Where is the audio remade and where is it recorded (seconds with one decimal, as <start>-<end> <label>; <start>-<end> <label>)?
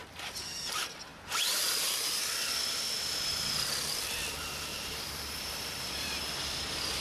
0.0-1.1 recorded; 1.1-2.2 remade; 2.2-4.7 recorded; 4.7-6.2 remade; 6.2-7.0 recorded